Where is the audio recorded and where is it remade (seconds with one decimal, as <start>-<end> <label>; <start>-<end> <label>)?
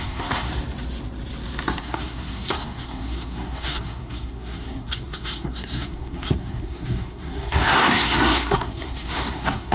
0.0-0.5 remade; 0.5-1.8 recorded; 1.8-9.7 remade